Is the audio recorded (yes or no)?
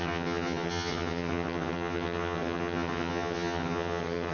no